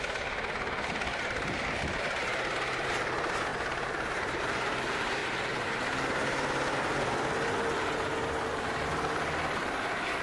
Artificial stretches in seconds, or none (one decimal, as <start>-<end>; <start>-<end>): 1.1-2.9; 3.5-4.4; 5.2-5.8; 8.1-8.9